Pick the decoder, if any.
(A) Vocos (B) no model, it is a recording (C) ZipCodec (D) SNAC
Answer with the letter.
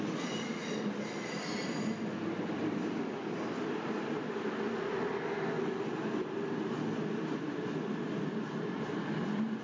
B